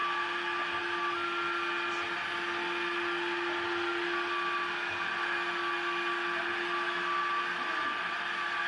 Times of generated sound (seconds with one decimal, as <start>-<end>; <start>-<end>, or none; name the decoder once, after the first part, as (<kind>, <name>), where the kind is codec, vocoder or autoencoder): none